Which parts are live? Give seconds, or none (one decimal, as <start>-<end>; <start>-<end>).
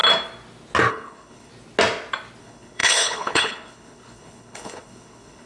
0.0-0.9; 1.5-2.4